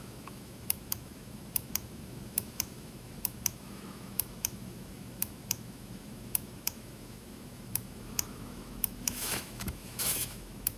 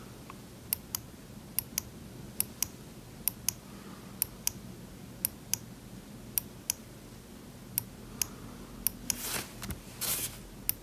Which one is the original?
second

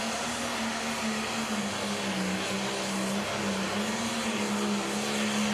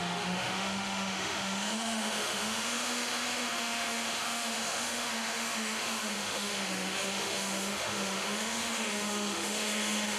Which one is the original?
first